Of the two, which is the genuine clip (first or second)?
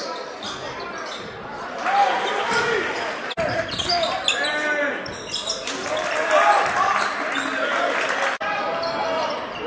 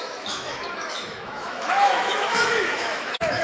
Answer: first